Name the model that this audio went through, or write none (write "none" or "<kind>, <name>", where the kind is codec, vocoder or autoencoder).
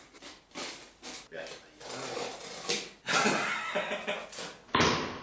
none